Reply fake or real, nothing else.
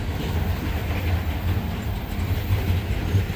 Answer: real